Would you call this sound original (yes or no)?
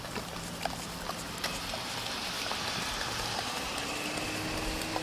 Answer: yes